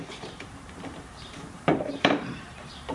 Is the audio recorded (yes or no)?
no